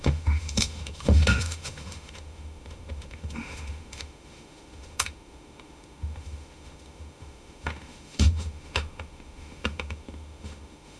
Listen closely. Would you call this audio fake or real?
fake